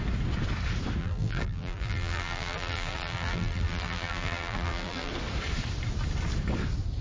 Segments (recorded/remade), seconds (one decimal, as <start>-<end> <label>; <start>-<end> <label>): 0.0-1.0 recorded; 1.0-5.1 remade; 5.1-7.0 recorded